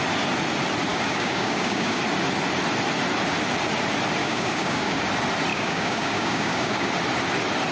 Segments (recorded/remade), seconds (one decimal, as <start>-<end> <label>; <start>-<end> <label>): 0.0-0.9 recorded; 0.9-2.0 remade; 2.0-4.2 recorded; 4.2-5.0 remade; 5.0-5.5 recorded; 5.5-6.9 remade; 6.9-7.7 recorded